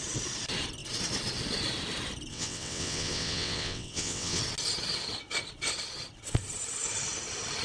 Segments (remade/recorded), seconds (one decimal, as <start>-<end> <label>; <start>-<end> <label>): 0.0-2.3 recorded; 2.3-4.4 remade; 4.4-7.6 recorded